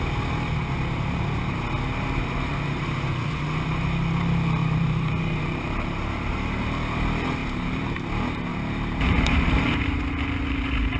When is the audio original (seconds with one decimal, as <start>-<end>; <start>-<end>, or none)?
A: 0.0-4.6; 6.6-7.4; 8.0-8.5; 10.0-11.0